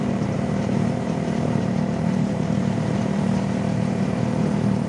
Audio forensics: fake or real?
fake